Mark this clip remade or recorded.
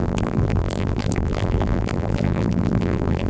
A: remade